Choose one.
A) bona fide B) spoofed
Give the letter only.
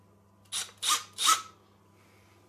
A